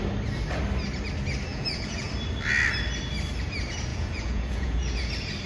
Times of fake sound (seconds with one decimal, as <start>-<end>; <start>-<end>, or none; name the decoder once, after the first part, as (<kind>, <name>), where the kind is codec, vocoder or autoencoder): 1.5-2.1 (vocoder, Vocos); 3.9-5.1